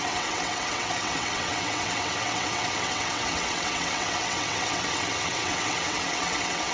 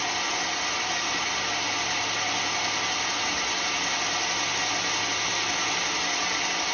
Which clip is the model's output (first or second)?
first